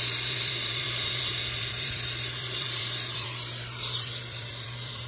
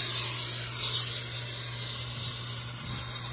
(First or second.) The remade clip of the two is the first